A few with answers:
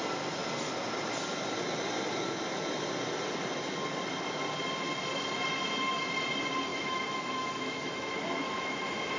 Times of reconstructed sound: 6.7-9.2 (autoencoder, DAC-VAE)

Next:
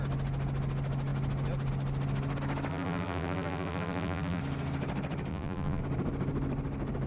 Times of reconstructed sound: 2.7-4.4 (vocoder, BigVGAN v2); 5.3-5.8

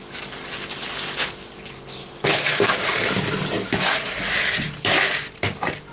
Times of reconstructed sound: 2.0-2.7 (autoencoder, DAC-VAE)

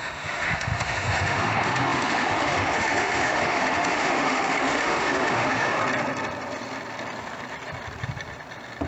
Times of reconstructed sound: 0.0-5.8 (autoencoder, DAC-VAE)

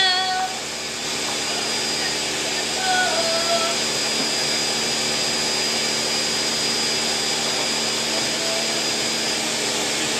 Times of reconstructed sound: none

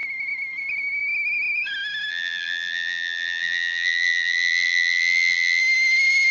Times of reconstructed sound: 2.1-5.6 (vocoder, BigVGAN v2)

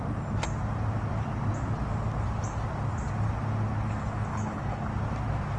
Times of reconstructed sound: 4.3-4.9 (codec, HILCodec)

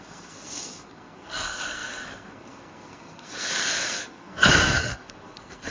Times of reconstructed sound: 0.0-5.7 (codec, SNAC)